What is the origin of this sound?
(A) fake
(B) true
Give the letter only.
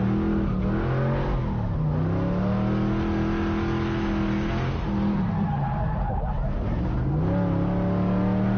B